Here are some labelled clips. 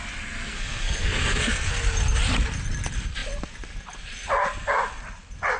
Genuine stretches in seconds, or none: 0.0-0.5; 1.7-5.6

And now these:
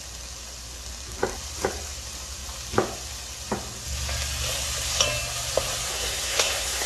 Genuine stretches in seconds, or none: 0.0-5.9

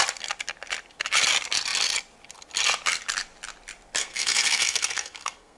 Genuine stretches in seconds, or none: 0.0-4.0

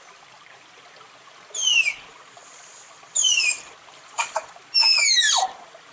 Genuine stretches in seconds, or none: 0.0-5.9

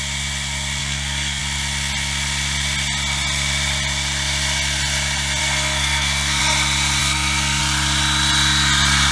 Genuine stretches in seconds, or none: 0.0-0.8; 1.4-5.4; 6.4-7.0; 7.6-9.1

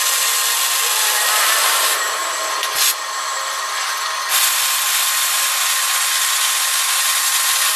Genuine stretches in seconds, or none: 0.0-7.8